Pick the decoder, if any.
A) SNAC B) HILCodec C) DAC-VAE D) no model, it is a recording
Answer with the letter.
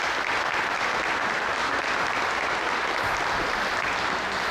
D